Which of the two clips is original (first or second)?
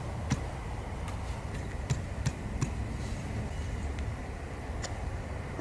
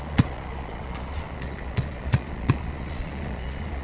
first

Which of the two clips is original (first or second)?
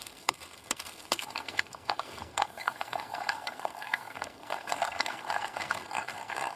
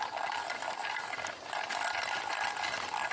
second